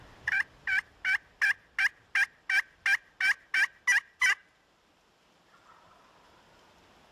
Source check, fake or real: real